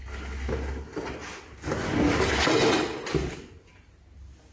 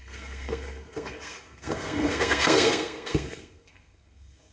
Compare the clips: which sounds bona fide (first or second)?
first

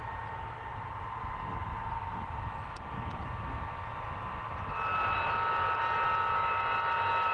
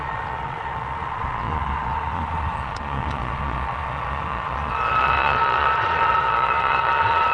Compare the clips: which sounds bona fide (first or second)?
first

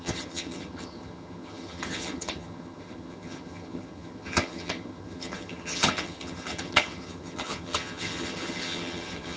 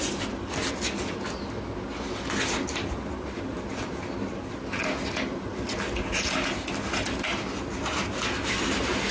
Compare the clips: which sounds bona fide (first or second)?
second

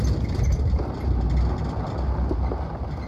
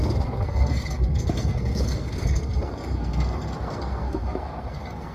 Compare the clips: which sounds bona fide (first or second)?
first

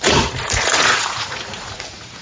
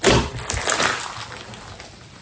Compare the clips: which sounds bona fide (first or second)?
second